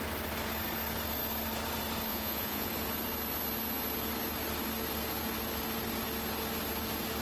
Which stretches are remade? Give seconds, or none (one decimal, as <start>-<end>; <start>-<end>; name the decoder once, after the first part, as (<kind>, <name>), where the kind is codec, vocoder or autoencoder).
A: 2.1-2.7 (vocoder, Vocos)